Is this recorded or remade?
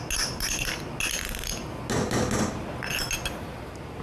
recorded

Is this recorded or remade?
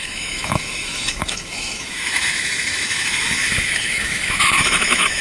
remade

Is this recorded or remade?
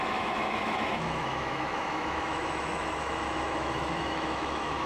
remade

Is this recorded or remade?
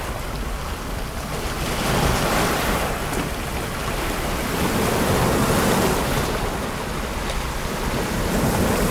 recorded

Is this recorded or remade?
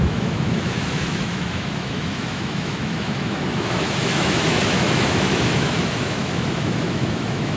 remade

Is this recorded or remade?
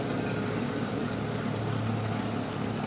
recorded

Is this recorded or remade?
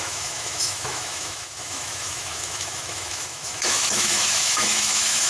remade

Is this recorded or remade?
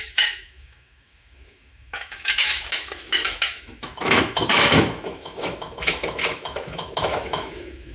remade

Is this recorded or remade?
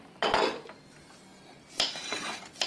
recorded